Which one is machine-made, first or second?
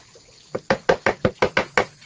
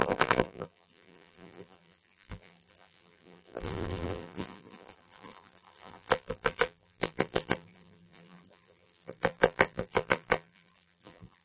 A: second